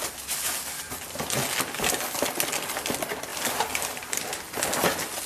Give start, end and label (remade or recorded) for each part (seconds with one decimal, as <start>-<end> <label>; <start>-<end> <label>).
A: 0.0-3.3 recorded; 3.3-4.4 remade; 4.4-5.3 recorded